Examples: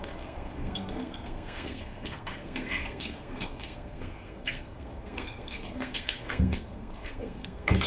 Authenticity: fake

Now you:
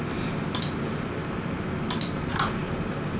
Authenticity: real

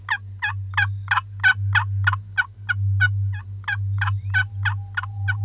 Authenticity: real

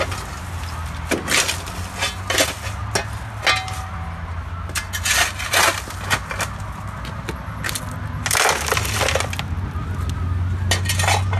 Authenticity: real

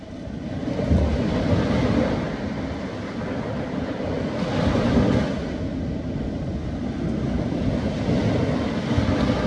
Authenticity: real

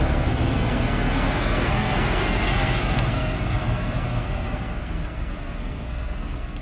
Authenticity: fake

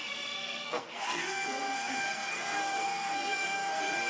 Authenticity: fake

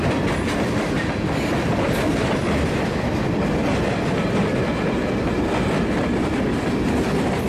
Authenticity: real